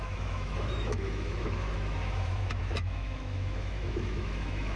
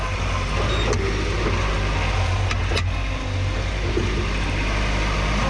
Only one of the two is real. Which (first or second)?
second